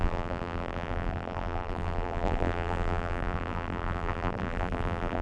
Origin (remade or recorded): remade